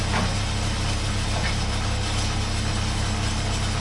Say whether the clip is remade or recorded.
recorded